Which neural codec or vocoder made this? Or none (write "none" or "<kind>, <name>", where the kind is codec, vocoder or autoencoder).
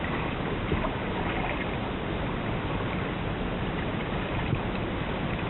vocoder, BigVGAN v2